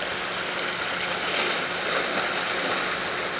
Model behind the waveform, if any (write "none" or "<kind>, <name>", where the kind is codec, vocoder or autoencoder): none